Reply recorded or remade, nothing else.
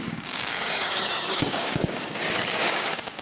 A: remade